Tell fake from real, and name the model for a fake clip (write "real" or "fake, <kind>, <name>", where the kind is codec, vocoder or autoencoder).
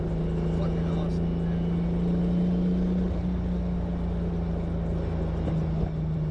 real